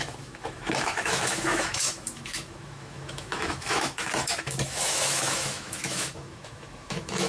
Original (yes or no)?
no